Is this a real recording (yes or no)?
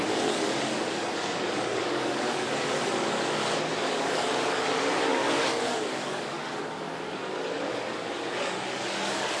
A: no